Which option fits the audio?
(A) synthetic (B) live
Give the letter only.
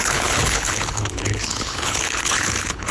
A